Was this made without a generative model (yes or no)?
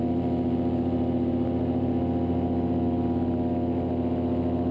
yes